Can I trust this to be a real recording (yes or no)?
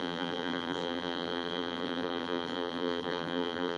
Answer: no